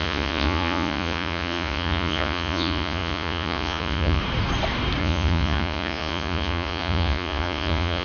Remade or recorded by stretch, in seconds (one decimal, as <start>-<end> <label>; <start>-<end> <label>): 0.0-4.2 remade; 4.2-5.0 recorded; 5.0-8.0 remade